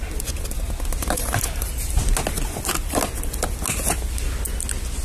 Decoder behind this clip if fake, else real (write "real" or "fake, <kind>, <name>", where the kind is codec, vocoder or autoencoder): real